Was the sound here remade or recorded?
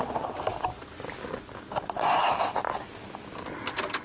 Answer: recorded